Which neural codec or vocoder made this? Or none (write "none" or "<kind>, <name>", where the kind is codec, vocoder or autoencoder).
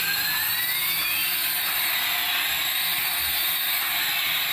none